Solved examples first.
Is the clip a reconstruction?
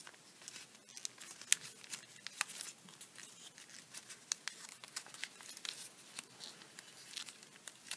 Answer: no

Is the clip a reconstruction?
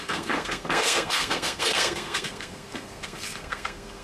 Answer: yes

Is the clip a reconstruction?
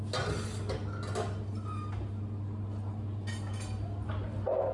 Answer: no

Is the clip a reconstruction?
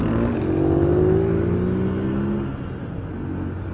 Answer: no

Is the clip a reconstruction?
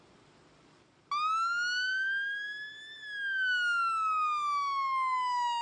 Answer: no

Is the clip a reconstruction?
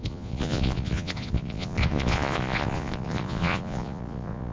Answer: yes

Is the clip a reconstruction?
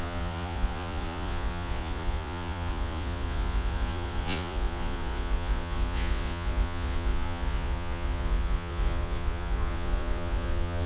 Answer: yes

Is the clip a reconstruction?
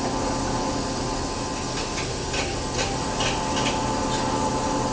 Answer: no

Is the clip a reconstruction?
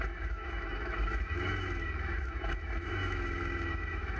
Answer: yes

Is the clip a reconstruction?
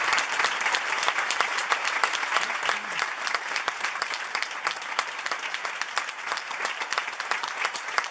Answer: yes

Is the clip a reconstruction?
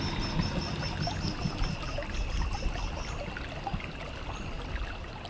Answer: no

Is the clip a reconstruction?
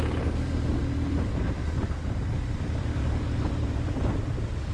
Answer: yes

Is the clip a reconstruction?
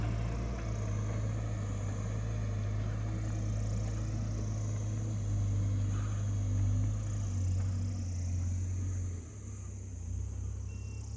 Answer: no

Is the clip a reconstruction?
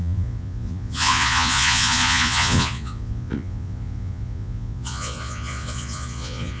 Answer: yes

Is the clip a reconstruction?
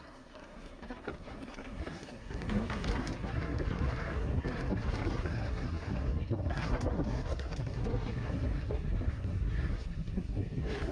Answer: yes